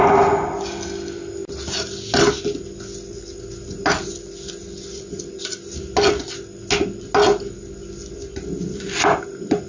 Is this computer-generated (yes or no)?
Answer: no